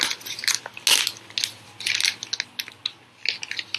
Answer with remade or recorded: recorded